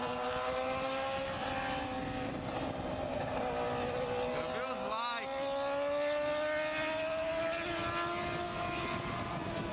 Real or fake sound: real